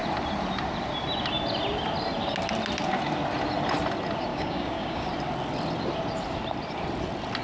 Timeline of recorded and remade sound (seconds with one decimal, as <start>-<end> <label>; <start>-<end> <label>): 0.0-4.3 recorded; 4.3-5.1 remade; 5.1-7.4 recorded